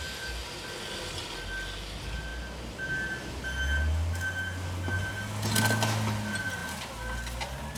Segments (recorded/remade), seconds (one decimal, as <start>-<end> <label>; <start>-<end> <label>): 0.0-7.8 recorded